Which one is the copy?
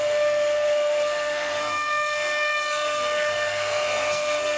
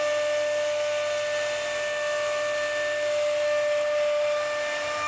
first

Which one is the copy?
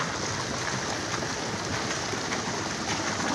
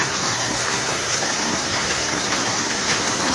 second